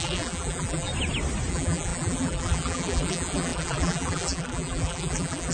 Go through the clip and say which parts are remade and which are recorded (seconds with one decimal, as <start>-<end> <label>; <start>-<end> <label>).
0.0-0.9 remade; 0.9-1.5 recorded; 1.5-5.5 remade